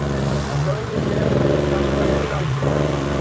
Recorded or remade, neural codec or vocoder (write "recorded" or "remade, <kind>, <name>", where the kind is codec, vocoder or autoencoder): remade, vocoder, Vocos